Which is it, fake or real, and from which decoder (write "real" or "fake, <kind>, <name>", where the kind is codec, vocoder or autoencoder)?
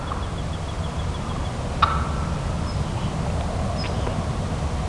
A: real